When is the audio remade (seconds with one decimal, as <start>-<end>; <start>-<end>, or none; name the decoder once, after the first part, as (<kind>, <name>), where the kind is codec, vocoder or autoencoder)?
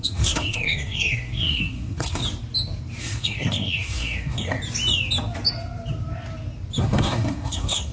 0.0-2.2 (codec, SNAC); 3.0-4.6; 6.8-7.9